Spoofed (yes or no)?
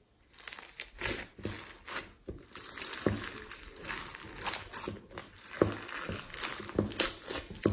no